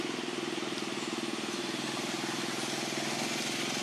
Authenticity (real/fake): real